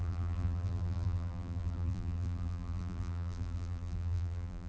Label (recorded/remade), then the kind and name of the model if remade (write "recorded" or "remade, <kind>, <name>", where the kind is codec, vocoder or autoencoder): remade, vocoder, BigVGAN v2